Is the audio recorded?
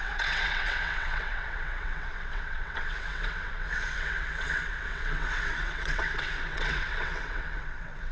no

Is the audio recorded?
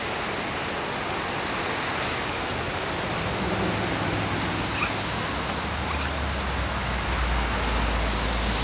yes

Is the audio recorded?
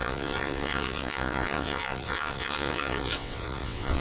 no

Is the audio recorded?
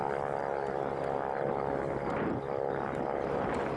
yes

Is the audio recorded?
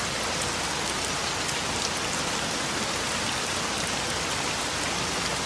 yes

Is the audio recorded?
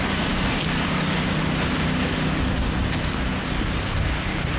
yes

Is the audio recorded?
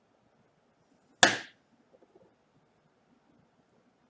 yes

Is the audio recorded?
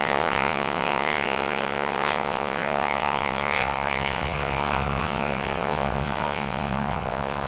no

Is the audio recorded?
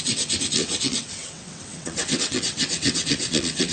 no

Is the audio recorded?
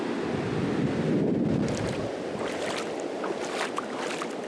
yes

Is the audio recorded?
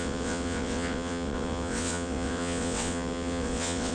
no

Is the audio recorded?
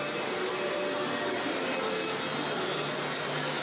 yes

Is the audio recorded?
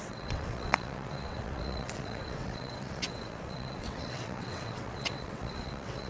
no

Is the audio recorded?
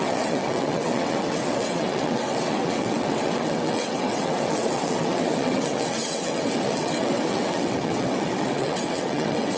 no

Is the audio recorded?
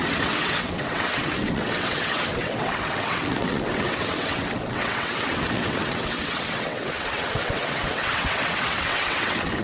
no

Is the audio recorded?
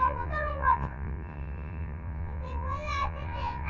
no